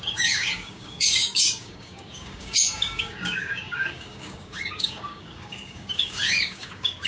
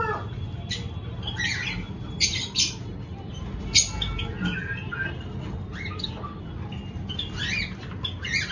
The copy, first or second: first